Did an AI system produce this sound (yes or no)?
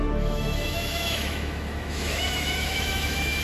yes